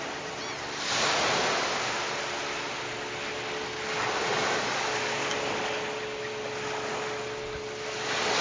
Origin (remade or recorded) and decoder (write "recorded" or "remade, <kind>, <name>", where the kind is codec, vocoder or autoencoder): recorded